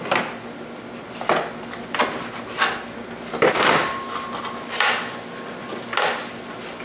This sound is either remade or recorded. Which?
recorded